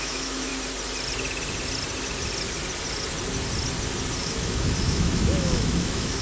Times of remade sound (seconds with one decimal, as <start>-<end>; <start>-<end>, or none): 0.0-0.5; 4.2-6.2